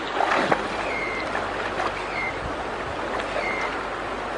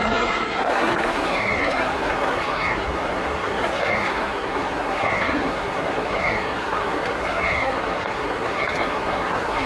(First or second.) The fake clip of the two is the second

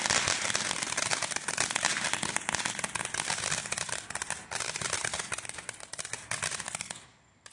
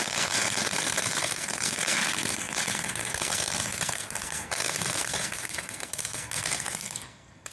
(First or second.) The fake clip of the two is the second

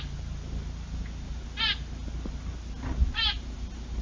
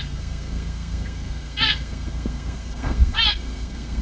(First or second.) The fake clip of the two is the second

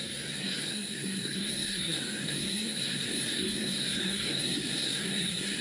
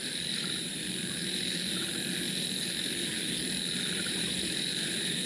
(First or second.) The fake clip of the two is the first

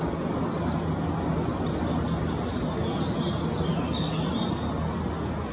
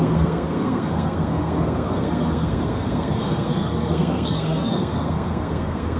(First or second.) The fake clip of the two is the second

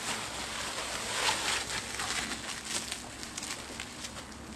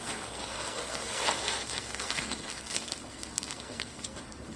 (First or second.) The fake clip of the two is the second